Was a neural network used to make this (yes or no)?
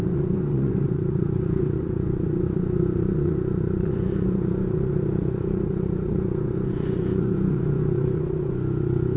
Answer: yes